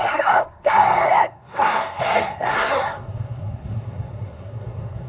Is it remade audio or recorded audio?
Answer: remade